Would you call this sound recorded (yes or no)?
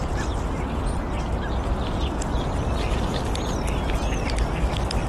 yes